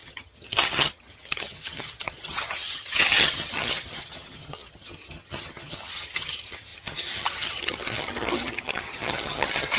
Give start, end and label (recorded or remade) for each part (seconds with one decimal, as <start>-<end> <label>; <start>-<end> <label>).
0.0-9.8 remade